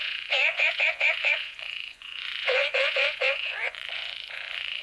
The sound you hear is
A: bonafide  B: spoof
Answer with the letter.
B